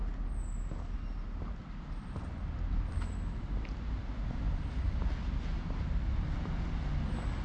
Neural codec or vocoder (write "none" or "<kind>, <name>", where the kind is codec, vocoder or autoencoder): none